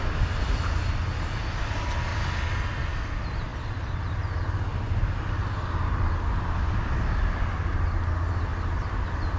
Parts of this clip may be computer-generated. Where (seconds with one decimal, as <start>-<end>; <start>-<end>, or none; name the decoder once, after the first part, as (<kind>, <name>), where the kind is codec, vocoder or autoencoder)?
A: none